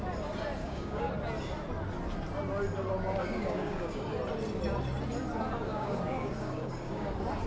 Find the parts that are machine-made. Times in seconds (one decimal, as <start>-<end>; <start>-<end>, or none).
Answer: 0.6-1.1; 3.2-4.0; 5.7-7.1